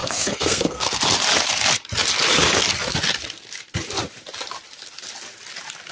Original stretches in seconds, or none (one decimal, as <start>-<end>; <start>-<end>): 1.0-5.9